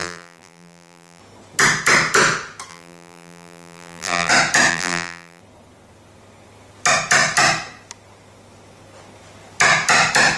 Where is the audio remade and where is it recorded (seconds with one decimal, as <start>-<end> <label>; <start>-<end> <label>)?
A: 0.0-1.2 remade; 1.2-2.7 recorded; 2.7-4.3 remade; 4.3-4.7 recorded; 4.7-5.4 remade; 5.4-10.4 recorded